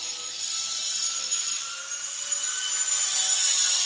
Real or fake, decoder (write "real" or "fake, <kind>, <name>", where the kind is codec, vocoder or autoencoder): real